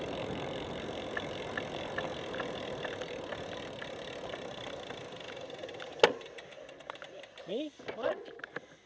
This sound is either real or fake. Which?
real